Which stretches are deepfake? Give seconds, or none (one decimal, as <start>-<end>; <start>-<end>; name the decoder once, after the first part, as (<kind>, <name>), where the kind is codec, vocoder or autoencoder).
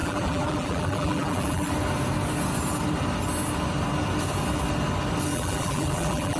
0.0-1.7 (vocoder, BigVGAN v2); 5.3-6.4